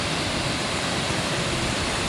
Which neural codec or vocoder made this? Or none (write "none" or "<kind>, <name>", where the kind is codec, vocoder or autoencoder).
none